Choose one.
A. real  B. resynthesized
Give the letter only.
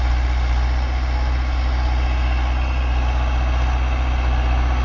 A